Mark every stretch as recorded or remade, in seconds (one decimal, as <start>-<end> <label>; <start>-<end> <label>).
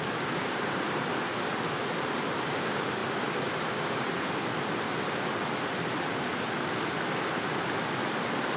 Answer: 0.0-8.6 recorded